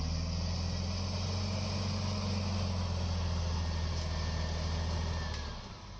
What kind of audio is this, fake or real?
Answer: real